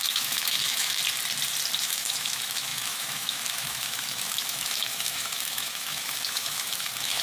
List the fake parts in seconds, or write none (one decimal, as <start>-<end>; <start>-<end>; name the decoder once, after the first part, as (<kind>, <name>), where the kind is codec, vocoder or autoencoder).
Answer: 0.0-1.0 (autoencoder, DAC-VAE); 1.8-7.2